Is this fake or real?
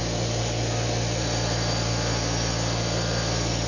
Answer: real